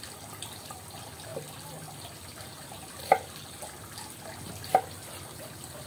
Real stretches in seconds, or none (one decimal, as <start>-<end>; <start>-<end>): 0.0-5.9